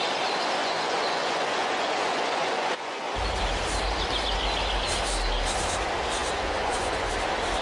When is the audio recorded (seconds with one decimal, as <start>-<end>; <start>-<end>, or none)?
0.0-0.6; 3.0-6.2; 7.1-7.6